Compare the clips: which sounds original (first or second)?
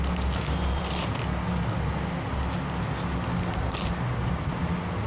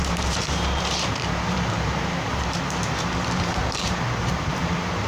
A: first